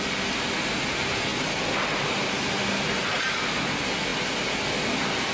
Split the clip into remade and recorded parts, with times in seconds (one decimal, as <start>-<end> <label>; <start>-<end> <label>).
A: 0.0-5.3 recorded